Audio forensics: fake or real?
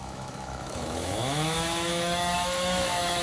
fake